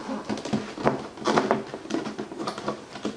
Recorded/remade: recorded